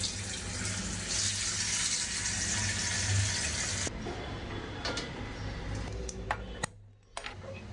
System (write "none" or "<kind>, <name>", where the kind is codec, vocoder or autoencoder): none